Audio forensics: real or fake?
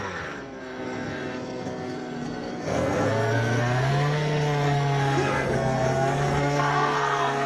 fake